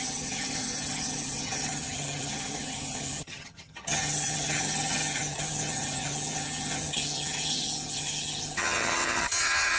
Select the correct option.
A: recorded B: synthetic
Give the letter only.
B